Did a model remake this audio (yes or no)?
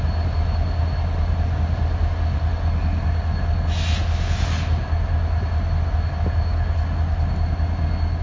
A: no